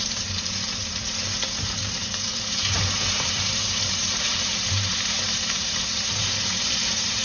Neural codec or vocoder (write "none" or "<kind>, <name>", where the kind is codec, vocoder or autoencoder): vocoder, BigVGAN v2